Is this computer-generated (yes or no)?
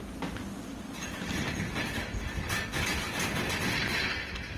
no